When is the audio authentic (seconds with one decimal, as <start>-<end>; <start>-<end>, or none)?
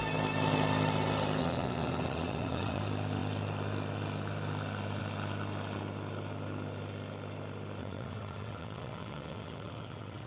0.0-1.4; 2.8-7.8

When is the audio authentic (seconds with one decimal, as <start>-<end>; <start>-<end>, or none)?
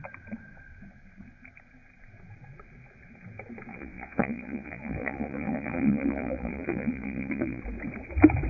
0.0-3.7; 7.6-8.5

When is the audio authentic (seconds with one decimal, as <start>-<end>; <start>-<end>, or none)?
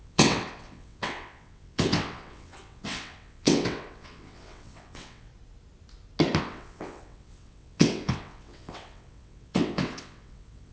5.3-6.4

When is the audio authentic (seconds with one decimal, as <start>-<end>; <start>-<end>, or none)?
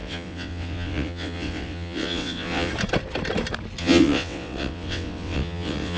2.7-3.8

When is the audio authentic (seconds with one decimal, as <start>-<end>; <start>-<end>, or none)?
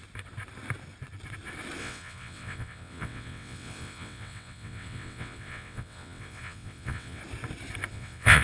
0.0-1.8; 7.2-7.9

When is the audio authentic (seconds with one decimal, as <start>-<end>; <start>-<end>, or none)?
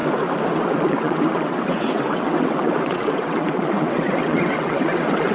0.0-0.5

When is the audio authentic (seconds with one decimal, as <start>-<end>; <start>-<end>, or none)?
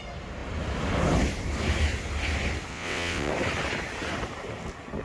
0.0-2.7; 3.3-5.0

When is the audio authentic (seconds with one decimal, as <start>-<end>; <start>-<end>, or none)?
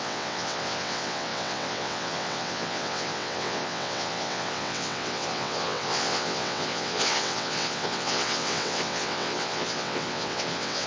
none